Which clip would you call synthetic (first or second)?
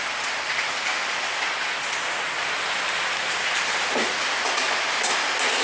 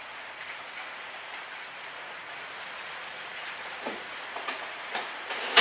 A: second